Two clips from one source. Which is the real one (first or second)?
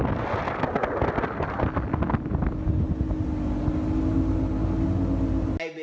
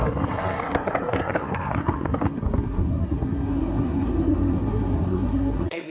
first